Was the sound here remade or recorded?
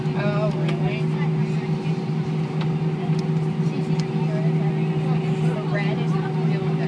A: recorded